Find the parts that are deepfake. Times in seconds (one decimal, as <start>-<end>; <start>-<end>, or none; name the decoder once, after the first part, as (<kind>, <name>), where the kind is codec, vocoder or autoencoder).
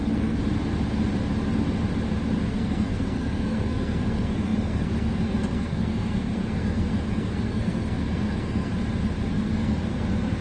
0.0-0.4 (codec, SNAC); 2.5-8.7; 9.3-10.4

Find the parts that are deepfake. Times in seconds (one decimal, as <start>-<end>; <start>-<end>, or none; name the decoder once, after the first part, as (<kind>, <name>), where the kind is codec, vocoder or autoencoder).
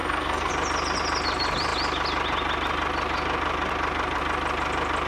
0.0-0.5 (codec, SNAC)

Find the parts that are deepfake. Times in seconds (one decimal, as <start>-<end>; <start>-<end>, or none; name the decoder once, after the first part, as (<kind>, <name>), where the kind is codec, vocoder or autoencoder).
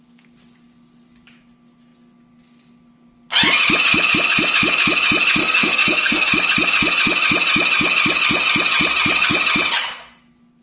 5.4-6.3 (codec, SNAC)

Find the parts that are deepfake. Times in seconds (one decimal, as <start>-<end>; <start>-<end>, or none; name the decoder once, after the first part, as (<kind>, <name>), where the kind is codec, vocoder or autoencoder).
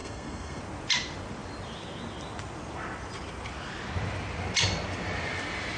0.0-0.6 (codec, SNAC)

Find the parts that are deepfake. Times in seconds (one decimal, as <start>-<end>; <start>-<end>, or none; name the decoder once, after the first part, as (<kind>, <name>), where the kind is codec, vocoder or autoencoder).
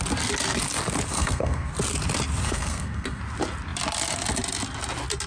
1.1-1.7 (codec, SNAC); 2.4-3.2